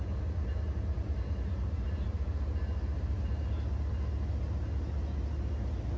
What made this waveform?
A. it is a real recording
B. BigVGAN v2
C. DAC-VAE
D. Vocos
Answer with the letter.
A